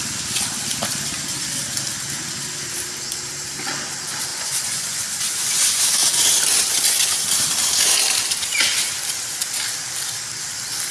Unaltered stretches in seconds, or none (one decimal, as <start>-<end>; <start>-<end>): 0.0-4.3; 5.8-10.9